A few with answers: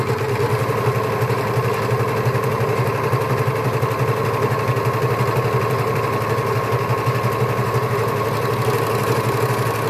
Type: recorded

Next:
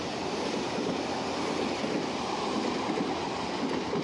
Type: recorded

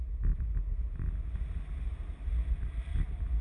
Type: recorded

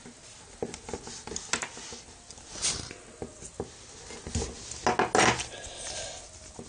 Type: recorded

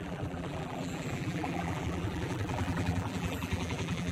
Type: remade